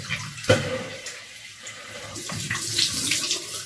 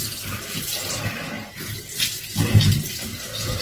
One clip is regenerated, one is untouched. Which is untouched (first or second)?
second